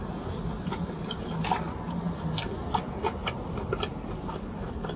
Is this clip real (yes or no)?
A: yes